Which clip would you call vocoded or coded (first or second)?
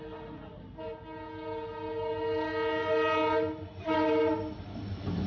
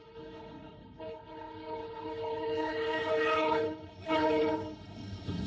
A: second